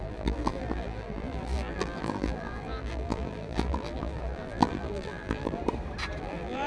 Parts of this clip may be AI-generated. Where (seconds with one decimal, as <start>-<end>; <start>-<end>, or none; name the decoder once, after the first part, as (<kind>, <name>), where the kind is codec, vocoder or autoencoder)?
0.0-5.6 (vocoder, BigVGAN v2); 6.2-6.7